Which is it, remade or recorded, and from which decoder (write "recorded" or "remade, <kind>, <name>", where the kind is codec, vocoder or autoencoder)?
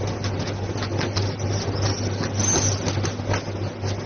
recorded